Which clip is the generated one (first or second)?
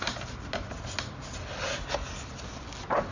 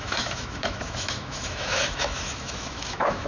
second